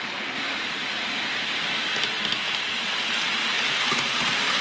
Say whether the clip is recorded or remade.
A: recorded